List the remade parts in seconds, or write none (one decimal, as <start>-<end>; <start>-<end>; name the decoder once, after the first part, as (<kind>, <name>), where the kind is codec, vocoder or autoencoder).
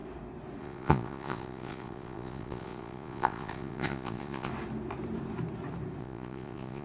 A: 0.6-4.5 (vocoder, Vocos); 6.0-6.8